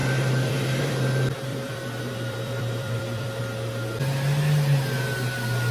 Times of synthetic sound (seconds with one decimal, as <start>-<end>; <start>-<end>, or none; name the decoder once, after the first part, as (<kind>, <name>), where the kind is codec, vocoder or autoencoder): 0.0-0.9 (vocoder, BigVGAN v2); 1.5-3.4